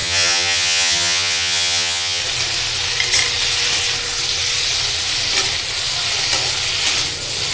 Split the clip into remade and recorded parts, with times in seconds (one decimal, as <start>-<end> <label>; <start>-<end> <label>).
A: 0.0-2.2 remade; 2.2-7.5 recorded